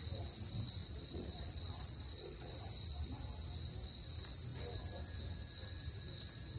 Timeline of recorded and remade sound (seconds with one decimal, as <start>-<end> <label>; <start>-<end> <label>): 0.0-0.8 recorded; 0.8-2.5 remade; 2.5-6.6 recorded